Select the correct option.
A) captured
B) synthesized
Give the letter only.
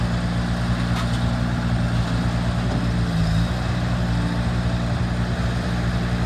A